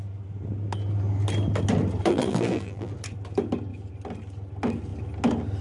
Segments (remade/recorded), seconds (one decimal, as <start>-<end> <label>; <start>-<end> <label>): 0.0-2.1 recorded; 2.1-2.9 remade; 2.9-5.6 recorded